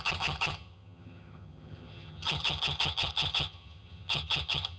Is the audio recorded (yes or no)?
no